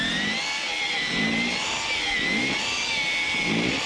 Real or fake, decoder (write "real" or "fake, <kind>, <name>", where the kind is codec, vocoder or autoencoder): real